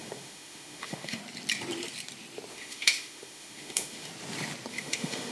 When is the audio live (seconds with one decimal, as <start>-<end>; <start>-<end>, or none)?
1.2-2.5; 4.1-4.7